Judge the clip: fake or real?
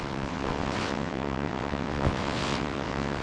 fake